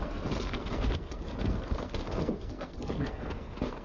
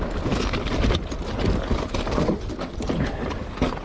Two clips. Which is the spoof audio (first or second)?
first